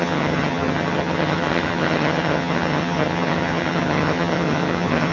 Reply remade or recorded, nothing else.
remade